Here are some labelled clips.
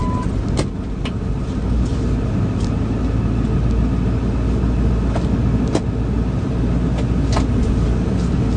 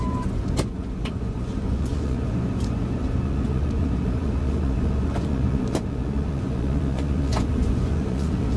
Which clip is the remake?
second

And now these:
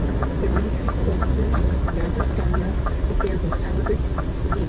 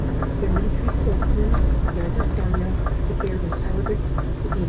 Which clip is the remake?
first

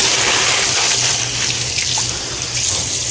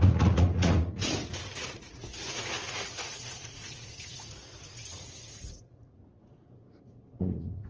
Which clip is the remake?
second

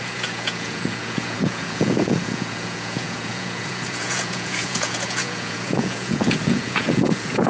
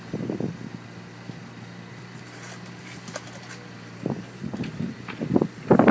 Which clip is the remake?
first